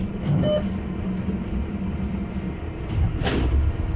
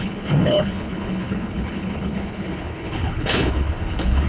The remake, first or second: second